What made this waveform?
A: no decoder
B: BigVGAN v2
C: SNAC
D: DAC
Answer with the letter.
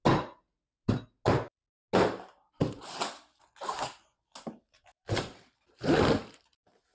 A